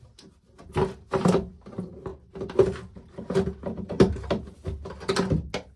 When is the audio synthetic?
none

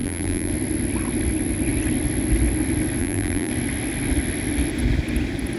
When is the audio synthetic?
0.0-0.5 (vocoder, BigVGAN v2); 3.0-3.5